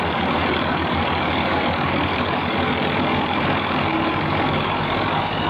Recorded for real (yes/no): no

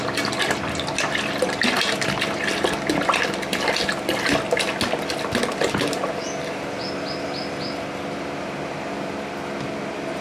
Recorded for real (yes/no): yes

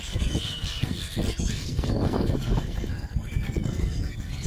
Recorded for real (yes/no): no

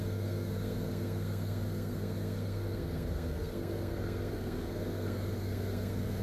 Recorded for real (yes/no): no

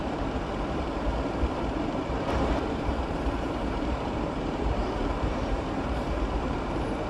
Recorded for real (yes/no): no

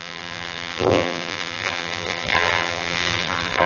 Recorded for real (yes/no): no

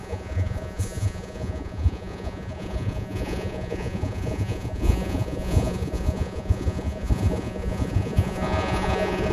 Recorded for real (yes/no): no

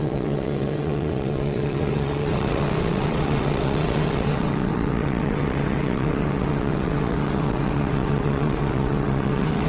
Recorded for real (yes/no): no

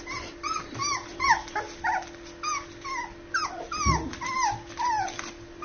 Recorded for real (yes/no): yes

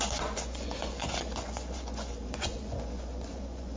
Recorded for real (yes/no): no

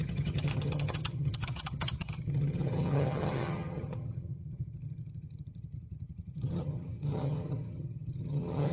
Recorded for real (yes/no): no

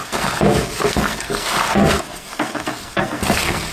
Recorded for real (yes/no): no